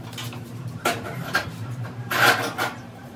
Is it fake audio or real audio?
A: fake